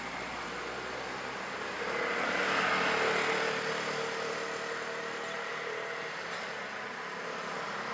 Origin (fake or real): real